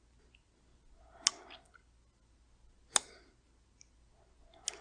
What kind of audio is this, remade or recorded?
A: recorded